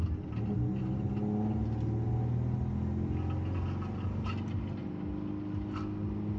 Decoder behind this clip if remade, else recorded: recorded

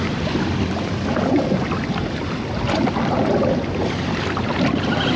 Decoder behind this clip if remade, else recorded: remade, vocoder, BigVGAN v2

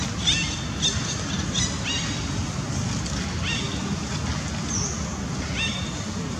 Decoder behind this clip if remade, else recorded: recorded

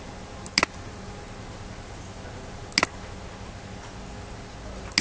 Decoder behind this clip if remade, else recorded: recorded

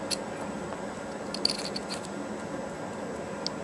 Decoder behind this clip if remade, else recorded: recorded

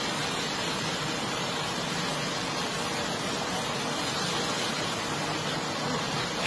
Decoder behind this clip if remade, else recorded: recorded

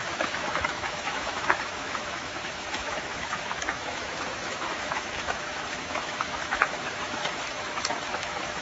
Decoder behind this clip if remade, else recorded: remade, autoencoder, DAC-VAE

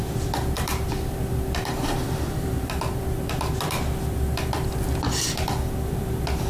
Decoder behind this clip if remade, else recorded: remade, vocoder, BigVGAN v2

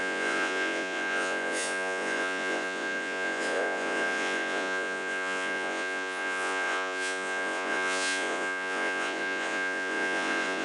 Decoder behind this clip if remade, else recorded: remade, vocoder, Vocos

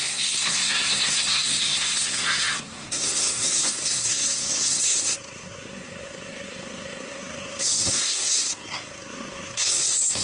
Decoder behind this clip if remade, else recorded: remade, codec, SNAC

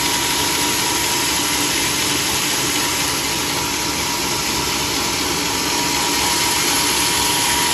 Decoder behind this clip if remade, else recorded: recorded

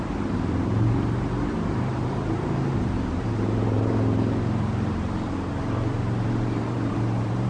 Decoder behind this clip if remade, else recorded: remade, vocoder, BigVGAN v2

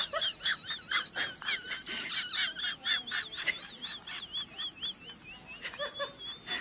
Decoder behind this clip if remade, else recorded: recorded